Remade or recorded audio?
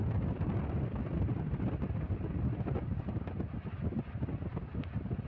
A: recorded